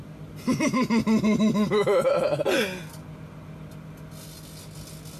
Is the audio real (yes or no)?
yes